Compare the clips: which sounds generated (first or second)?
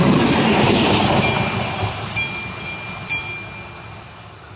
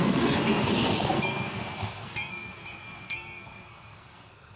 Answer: second